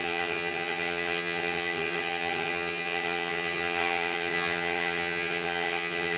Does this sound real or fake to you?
fake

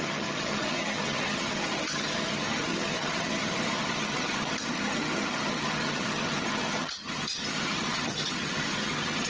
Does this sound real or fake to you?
fake